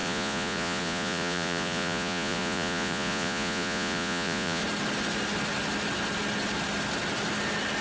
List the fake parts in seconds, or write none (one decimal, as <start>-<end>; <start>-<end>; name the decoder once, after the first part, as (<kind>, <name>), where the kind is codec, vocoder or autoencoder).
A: 0.0-4.6 (vocoder, Vocos)